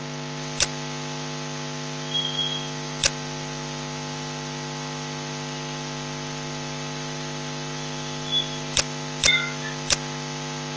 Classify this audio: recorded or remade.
recorded